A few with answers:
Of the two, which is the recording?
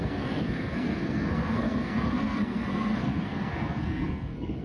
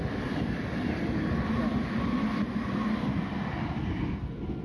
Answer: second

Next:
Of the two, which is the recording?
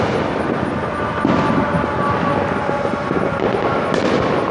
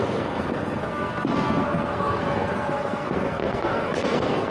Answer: first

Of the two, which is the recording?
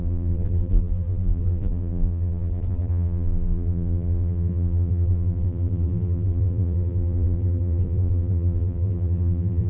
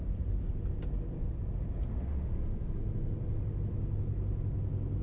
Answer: second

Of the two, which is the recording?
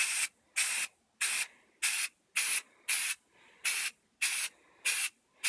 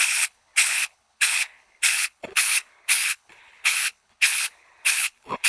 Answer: first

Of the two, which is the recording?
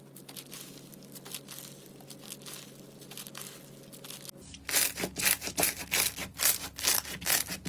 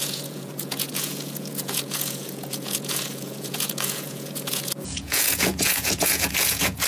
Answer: first